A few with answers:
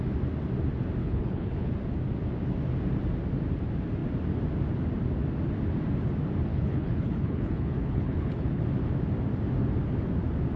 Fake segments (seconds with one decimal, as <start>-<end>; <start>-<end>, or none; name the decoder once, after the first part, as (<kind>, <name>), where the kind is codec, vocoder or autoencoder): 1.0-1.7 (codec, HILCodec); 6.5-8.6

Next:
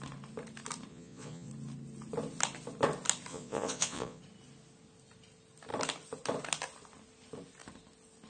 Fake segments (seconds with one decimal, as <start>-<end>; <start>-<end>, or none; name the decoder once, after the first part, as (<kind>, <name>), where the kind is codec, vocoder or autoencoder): 0.9-1.5 (vocoder, Vocos); 3.3-4.2

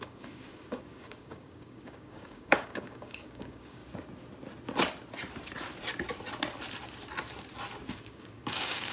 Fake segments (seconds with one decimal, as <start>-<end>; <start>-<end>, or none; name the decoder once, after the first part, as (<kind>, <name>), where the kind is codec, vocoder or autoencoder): 0.0-3.8 (codec, DAC); 7.9-8.9

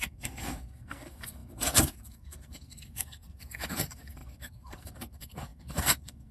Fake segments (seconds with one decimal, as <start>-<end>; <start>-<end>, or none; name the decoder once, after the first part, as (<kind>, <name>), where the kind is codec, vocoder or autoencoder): 0.0-6.3 (codec, SNAC)